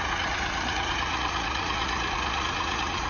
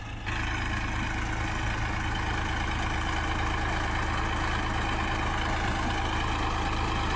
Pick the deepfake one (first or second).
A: first